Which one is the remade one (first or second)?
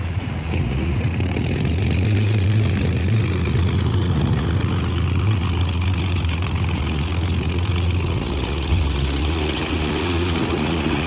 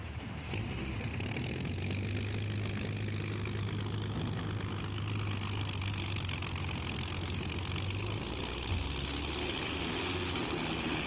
first